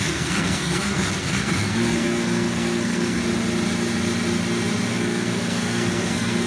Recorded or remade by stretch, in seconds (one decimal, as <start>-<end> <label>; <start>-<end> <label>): 0.0-3.2 remade; 3.2-4.9 recorded; 4.9-6.5 remade